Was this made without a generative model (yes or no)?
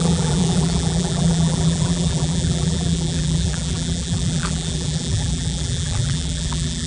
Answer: no